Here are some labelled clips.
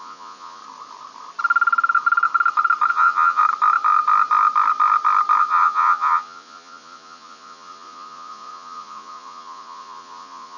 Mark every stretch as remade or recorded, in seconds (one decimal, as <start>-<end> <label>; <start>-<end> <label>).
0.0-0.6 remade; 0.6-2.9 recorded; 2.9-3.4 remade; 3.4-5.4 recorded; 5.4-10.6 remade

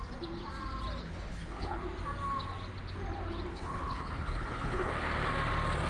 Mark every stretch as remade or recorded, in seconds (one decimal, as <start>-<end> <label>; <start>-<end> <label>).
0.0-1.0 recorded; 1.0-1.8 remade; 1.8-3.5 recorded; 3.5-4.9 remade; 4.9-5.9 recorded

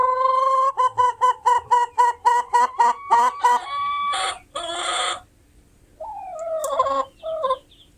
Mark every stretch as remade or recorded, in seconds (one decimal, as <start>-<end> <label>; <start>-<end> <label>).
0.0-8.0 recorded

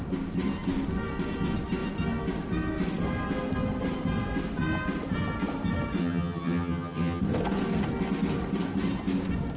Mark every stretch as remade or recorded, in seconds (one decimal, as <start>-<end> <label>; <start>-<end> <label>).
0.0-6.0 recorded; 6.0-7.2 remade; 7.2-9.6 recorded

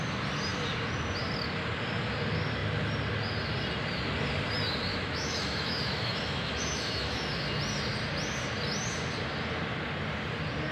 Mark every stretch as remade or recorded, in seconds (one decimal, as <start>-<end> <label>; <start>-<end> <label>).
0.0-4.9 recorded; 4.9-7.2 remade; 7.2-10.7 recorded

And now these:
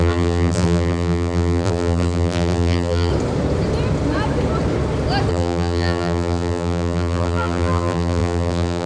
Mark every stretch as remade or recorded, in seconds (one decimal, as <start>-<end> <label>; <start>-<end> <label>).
0.0-3.1 remade; 3.1-5.3 recorded; 5.3-8.9 remade

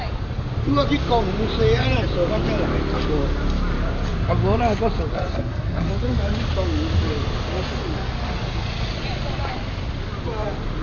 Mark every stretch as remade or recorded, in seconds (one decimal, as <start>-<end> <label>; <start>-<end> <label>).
0.0-5.1 recorded; 5.1-5.9 remade; 5.9-10.8 recorded

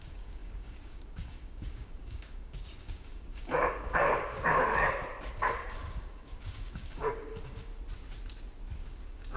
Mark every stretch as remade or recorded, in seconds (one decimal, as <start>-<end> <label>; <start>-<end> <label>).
0.0-4.7 remade; 4.7-5.3 recorded; 5.3-7.7 remade; 7.7-8.8 recorded; 8.8-9.4 remade